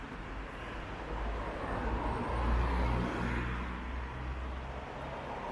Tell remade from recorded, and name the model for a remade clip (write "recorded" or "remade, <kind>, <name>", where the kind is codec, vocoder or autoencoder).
recorded